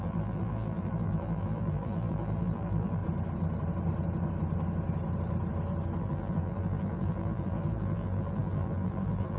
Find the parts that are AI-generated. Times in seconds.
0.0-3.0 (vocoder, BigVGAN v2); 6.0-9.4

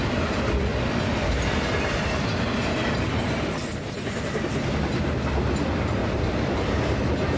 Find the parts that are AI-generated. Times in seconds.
0.7-4.7 (vocoder, BigVGAN v2); 6.0-7.0

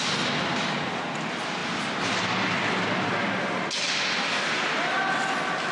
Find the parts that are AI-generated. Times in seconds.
none

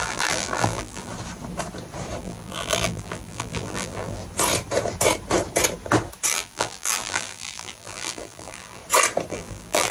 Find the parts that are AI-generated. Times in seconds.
0.0-1.1 (vocoder, BigVGAN v2); 2.2-4.2; 6.3-8.8; 9.3-9.9

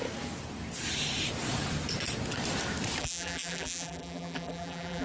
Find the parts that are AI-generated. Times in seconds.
3.0-5.0 (vocoder, BigVGAN v2)

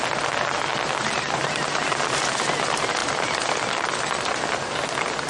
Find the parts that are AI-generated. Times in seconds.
3.0-4.3 (vocoder, BigVGAN v2)

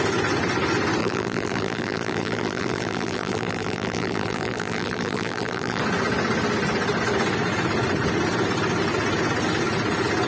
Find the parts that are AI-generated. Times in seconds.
1.0-5.8 (vocoder, BigVGAN v2)